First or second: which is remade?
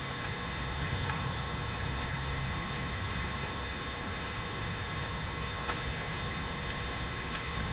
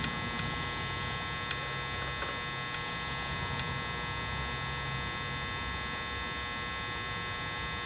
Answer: first